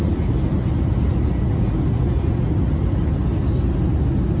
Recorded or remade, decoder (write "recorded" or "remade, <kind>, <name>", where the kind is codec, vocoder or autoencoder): recorded